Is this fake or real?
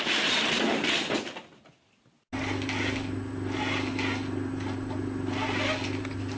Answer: real